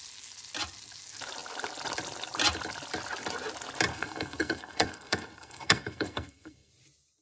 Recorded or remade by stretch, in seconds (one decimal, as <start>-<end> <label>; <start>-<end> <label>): 0.0-3.9 recorded; 3.9-6.7 remade; 6.7-7.2 recorded